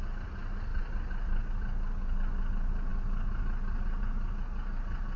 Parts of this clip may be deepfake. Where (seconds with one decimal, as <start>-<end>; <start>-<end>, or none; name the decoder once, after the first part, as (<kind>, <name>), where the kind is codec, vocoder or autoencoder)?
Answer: none